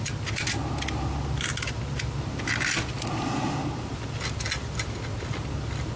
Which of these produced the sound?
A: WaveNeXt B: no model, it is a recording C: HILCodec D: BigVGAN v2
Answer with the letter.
B